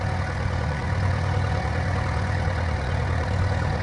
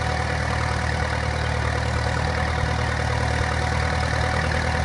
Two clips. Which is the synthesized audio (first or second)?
first